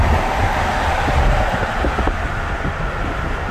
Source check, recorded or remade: recorded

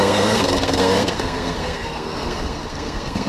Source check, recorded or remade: remade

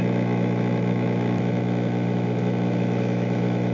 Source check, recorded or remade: remade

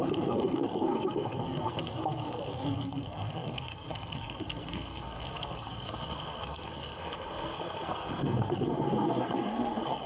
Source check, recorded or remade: remade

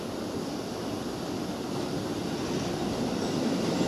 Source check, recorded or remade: recorded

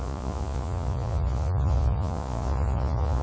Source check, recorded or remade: remade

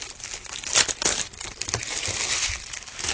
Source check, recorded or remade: recorded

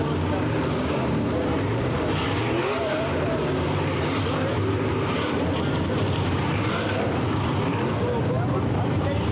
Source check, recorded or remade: remade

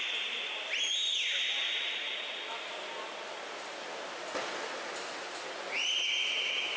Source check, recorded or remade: recorded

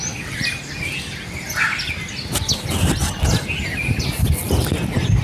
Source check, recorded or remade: recorded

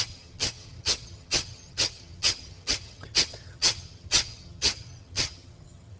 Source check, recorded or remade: remade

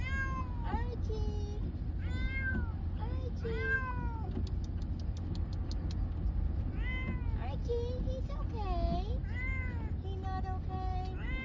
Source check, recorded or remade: recorded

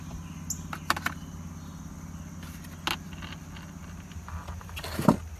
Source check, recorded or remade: recorded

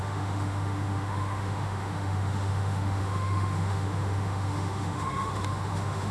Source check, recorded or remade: remade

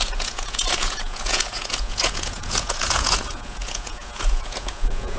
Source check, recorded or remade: remade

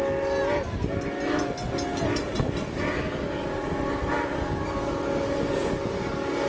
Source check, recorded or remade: recorded